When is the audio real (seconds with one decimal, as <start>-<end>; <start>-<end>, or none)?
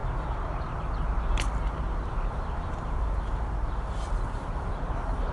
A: 0.0-5.3